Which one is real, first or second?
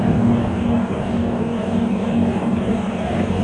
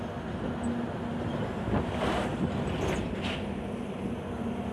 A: second